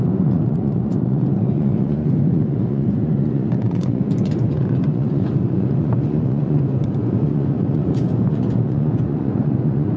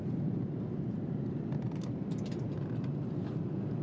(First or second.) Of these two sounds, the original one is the second